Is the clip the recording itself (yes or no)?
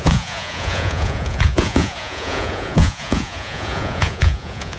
no